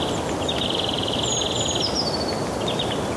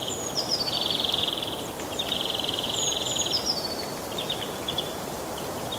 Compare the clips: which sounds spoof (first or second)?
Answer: second